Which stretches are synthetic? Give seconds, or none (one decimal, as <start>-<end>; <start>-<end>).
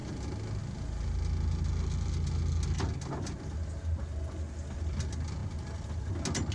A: none